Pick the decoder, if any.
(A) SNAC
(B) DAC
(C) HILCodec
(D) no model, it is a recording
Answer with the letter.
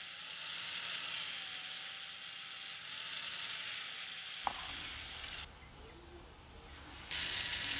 D